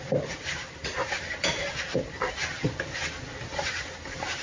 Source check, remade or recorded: recorded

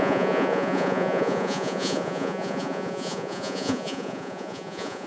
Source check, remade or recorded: remade